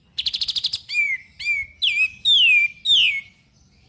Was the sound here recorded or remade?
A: recorded